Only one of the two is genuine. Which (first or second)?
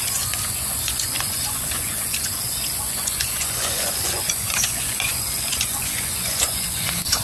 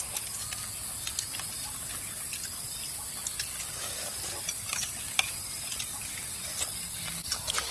second